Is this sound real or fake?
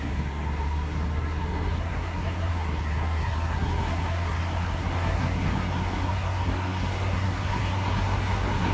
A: fake